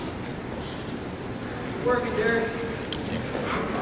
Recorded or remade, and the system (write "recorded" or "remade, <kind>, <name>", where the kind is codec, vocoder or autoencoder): recorded